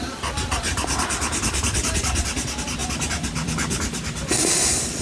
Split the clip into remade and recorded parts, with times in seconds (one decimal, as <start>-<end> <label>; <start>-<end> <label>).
0.0-5.0 remade